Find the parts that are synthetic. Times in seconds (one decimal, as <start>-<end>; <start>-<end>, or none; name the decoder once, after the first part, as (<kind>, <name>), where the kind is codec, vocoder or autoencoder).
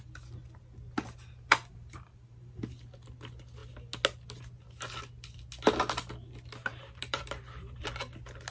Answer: 1.7-2.6 (vocoder, BigVGAN v2); 6.7-7.8